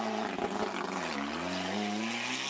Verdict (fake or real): real